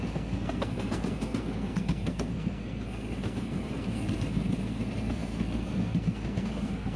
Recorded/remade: remade